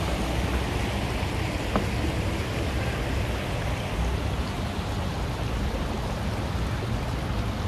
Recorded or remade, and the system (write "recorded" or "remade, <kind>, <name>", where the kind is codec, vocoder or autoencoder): recorded